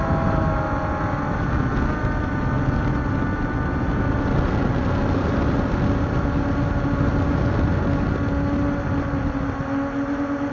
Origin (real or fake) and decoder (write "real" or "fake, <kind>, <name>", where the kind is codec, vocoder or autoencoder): real